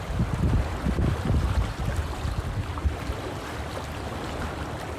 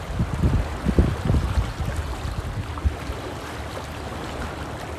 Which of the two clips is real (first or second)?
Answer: second